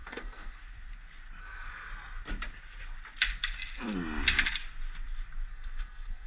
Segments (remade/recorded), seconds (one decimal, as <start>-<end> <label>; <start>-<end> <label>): 0.0-0.6 remade; 0.6-1.4 recorded; 1.4-1.9 remade; 1.9-5.5 recorded; 5.5-6.3 remade